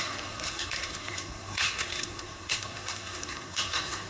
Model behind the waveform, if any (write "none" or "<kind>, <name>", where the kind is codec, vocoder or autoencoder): codec, SNAC